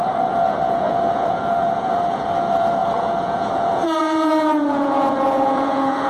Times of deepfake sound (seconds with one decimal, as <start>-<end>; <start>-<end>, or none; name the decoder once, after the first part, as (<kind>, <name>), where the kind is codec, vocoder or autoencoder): 0.0-6.1 (vocoder, Vocos)